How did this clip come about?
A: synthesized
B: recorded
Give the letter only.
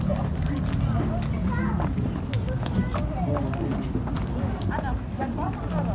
B